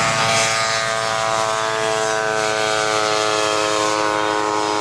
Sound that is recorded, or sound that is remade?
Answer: recorded